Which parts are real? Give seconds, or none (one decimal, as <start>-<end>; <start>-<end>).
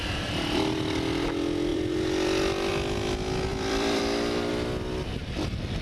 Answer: 0.0-1.7; 2.7-3.5; 4.5-5.8